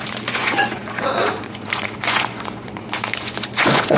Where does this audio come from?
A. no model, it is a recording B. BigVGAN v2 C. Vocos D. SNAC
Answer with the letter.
C